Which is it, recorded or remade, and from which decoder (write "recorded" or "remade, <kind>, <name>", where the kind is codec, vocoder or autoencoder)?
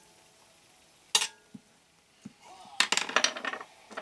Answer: recorded